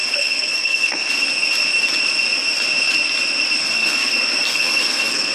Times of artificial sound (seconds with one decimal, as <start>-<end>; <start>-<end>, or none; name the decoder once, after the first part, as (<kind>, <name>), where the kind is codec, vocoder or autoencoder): 0.0-1.1 (codec, SNAC); 3.6-4.1; 4.5-5.3